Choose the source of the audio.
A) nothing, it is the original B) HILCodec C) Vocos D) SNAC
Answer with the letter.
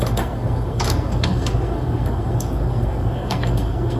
D